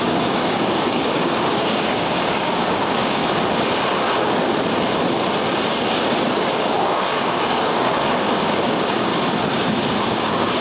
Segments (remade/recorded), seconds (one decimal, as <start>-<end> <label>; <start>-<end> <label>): 0.0-3.2 remade; 3.2-6.5 recorded; 6.5-9.1 remade; 9.1-10.1 recorded; 10.1-10.6 remade